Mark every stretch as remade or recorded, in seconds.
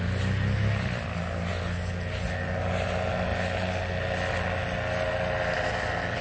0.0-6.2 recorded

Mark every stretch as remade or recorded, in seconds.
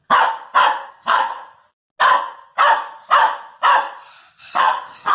0.0-0.9 recorded; 0.9-1.3 remade; 1.3-4.4 recorded; 4.4-5.1 remade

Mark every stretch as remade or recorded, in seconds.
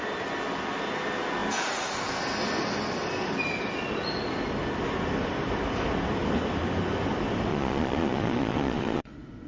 0.0-7.5 recorded; 7.5-9.1 remade; 9.1-9.5 recorded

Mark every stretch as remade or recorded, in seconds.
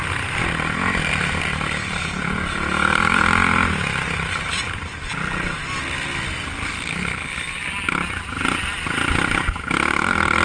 0.0-10.4 recorded